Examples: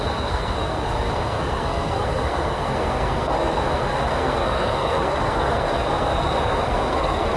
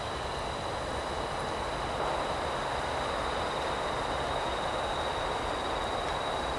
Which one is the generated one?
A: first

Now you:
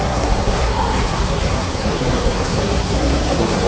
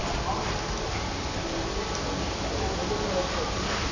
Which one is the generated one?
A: first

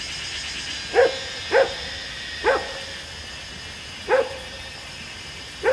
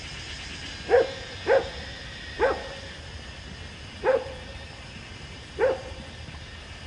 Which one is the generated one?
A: second